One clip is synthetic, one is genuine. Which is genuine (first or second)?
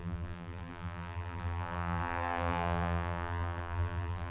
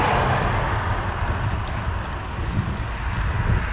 second